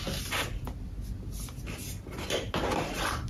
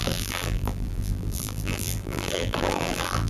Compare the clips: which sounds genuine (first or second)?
first